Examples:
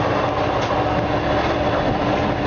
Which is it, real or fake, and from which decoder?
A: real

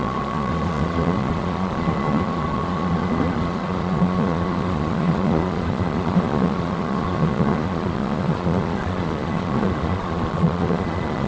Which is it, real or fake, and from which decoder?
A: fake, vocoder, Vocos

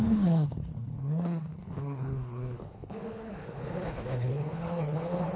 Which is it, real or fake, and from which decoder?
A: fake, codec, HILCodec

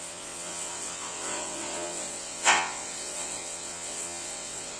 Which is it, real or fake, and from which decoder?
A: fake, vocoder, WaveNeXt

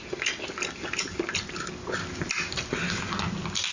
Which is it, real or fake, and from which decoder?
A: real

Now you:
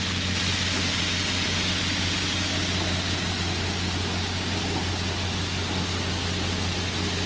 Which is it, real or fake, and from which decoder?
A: real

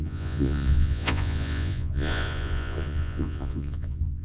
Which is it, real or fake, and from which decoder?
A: fake, vocoder, Vocos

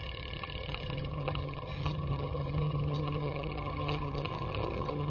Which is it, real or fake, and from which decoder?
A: fake, vocoder, HiFi-GAN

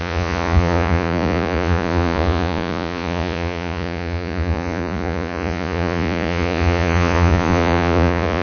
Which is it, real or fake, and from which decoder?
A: fake, vocoder, Vocos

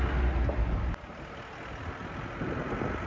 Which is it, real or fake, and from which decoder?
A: real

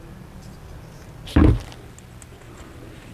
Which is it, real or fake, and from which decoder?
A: real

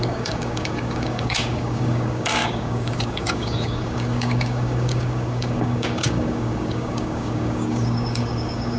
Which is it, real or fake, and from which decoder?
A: fake, codec, DAC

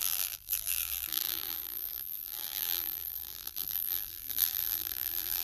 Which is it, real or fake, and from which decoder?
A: fake, vocoder, BigVGAN v2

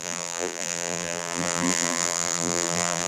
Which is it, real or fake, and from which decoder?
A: fake, vocoder, BigVGAN v2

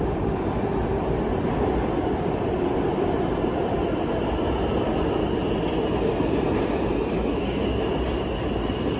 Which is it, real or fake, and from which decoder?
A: real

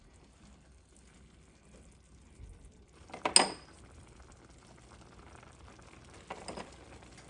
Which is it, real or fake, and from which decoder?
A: real